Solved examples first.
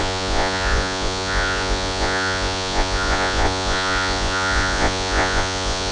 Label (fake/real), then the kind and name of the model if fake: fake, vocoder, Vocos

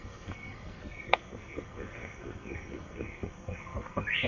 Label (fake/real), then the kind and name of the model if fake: fake, codec, SNAC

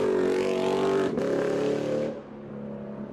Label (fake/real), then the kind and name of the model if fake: real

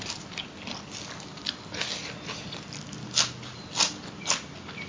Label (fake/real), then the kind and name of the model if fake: real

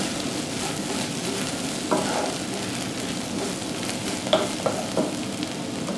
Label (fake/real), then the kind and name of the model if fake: real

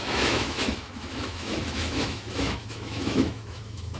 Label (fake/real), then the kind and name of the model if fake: fake, autoencoder, DAC-VAE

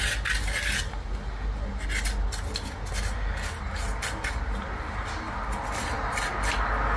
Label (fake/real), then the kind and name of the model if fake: real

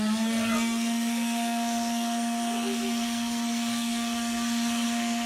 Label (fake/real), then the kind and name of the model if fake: fake, codec, SNAC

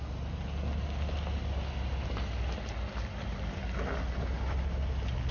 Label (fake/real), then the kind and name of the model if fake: real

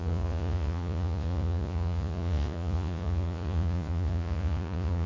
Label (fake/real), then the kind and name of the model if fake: fake, vocoder, Vocos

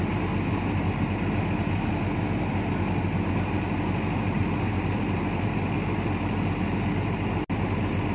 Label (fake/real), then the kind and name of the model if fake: real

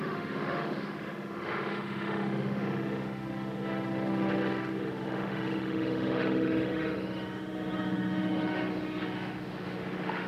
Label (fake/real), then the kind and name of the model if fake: fake, autoencoder, DAC-VAE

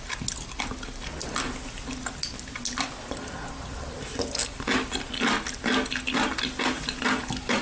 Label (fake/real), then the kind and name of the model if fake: real